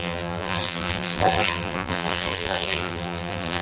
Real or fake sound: fake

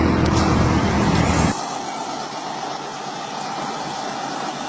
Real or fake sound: real